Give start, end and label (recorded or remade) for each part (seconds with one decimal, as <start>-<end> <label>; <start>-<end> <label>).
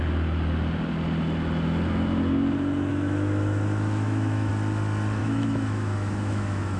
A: 0.0-2.9 recorded; 2.9-4.5 remade; 4.5-5.2 recorded; 5.2-6.8 remade